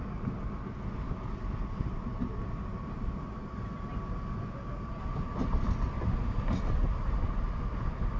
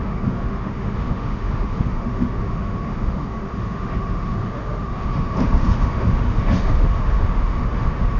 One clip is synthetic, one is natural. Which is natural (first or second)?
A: first